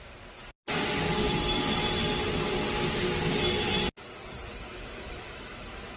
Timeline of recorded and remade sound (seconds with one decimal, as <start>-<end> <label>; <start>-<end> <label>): 0.0-4.5 recorded; 4.5-6.0 remade